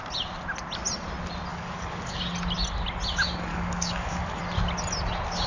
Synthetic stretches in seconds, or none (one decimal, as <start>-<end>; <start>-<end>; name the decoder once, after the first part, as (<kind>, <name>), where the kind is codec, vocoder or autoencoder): 1.5-2.2 (codec, DAC); 3.5-4.4